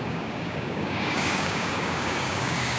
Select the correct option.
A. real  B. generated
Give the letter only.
B